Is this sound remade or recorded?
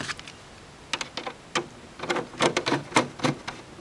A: recorded